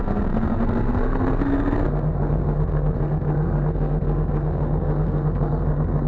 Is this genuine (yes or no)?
no